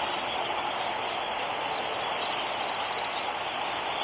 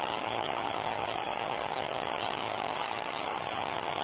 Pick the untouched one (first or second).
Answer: first